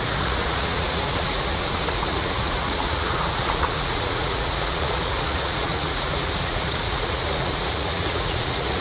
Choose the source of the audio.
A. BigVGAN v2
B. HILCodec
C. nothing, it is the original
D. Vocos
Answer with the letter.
D